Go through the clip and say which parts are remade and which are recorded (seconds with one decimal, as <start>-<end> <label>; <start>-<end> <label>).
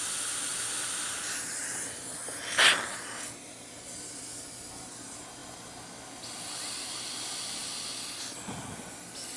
0.0-9.4 recorded